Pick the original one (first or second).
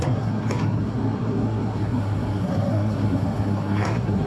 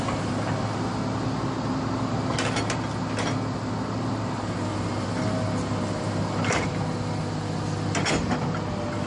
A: second